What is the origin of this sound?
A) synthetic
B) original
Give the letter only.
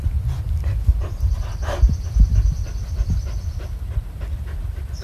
A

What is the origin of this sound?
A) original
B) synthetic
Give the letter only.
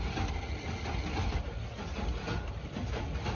A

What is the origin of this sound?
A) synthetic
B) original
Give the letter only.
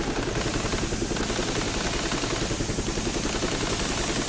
B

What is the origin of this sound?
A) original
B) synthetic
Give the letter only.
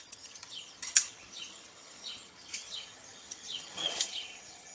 B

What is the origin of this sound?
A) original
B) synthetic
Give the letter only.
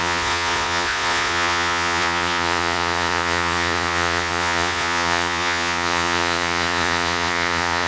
B